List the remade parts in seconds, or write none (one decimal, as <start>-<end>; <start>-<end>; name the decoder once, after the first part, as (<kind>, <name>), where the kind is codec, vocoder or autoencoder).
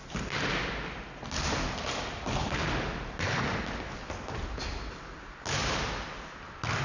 none